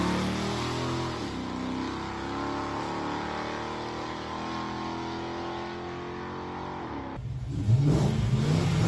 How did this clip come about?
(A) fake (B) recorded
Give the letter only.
B